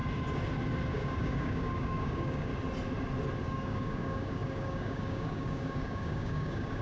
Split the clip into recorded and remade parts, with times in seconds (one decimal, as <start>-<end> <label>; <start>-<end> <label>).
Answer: 0.0-0.9 recorded; 0.9-2.5 remade; 2.5-3.4 recorded; 3.4-6.8 remade